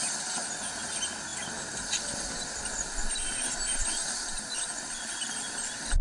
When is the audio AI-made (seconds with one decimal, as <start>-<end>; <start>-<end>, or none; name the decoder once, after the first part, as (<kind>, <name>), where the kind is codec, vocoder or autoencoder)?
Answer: none